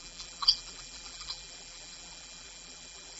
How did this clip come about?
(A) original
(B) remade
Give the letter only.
B